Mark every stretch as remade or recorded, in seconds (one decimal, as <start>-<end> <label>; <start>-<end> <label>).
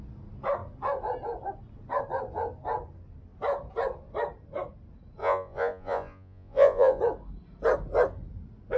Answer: 0.0-5.2 recorded; 5.2-7.0 remade; 7.0-8.8 recorded